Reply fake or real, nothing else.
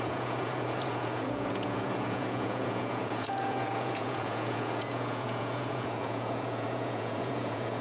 fake